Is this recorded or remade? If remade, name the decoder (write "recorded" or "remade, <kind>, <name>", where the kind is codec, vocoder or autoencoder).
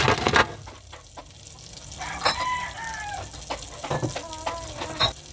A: recorded